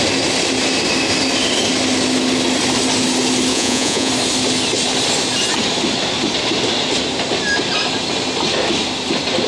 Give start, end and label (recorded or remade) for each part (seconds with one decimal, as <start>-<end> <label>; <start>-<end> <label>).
0.0-3.5 recorded; 3.5-4.1 remade; 4.1-9.5 recorded